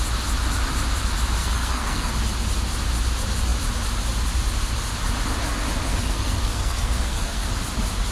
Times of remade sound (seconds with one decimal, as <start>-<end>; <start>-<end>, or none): 1.4-2.1; 5.9-7.5